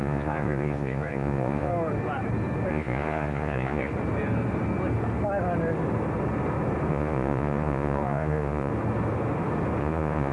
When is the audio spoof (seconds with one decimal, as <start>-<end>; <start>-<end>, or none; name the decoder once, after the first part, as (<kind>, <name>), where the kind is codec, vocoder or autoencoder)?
0.0-1.7 (vocoder, Vocos); 2.7-3.9; 6.9-8.7; 9.8-10.3